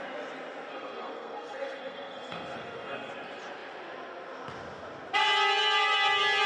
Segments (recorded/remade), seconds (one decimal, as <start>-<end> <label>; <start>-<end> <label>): 0.0-0.7 recorded; 0.7-3.1 remade; 3.1-6.5 recorded

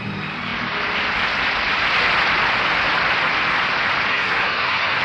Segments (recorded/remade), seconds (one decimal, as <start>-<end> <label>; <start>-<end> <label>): 0.0-4.1 recorded; 4.1-5.0 remade

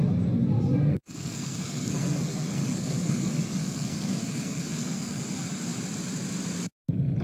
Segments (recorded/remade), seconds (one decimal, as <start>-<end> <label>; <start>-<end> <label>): 0.0-0.9 recorded; 0.9-5.2 remade; 5.2-7.2 recorded